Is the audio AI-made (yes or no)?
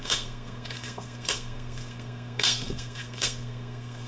yes